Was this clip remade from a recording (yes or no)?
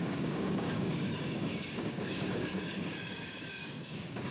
yes